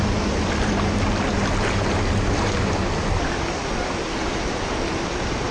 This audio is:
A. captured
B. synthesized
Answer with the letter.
A